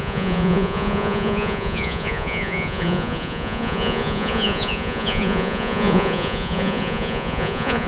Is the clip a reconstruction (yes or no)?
yes